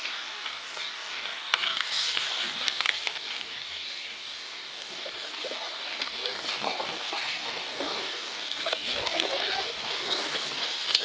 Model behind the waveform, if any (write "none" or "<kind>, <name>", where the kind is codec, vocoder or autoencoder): codec, DAC